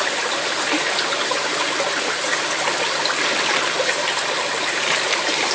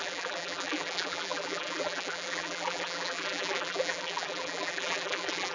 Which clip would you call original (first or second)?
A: first